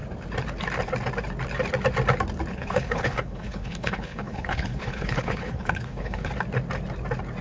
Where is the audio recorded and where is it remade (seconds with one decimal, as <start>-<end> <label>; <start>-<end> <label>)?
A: 0.0-2.5 recorded; 2.5-6.3 remade; 6.3-7.4 recorded